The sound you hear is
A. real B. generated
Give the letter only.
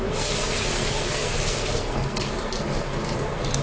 B